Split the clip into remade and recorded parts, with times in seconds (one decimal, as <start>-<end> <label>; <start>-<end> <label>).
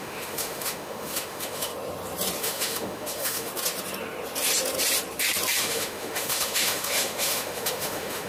0.0-1.7 remade; 1.7-2.4 recorded; 2.4-3.5 remade; 3.5-5.6 recorded; 5.6-8.3 remade